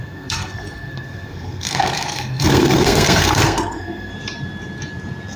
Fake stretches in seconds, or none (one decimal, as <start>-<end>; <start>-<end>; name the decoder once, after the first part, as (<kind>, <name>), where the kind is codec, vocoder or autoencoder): 0.0-4.1 (codec, SNAC)